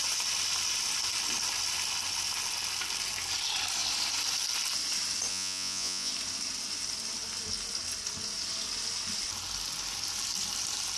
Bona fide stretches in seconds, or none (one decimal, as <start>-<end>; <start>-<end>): 0.0-5.3; 6.1-11.0